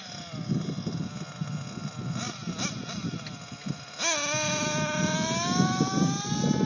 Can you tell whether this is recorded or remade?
recorded